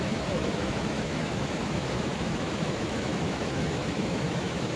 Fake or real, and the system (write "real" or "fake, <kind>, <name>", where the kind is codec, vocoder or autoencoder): fake, autoencoder, DAC-VAE